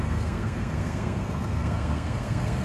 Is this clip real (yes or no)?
no